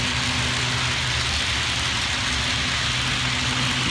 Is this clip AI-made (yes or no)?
no